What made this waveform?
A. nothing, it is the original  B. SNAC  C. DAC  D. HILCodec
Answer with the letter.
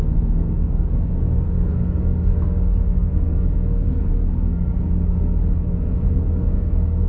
B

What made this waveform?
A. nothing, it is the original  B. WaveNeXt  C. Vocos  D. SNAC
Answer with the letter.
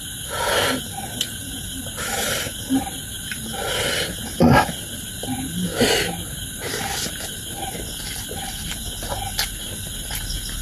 A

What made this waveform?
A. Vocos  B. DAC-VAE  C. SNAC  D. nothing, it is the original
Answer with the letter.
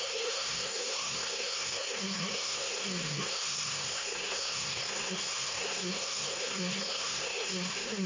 C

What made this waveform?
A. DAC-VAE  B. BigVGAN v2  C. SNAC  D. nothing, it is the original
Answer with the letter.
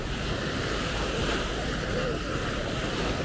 D